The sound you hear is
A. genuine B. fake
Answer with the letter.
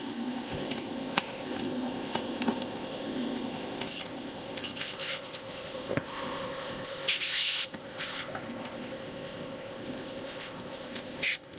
B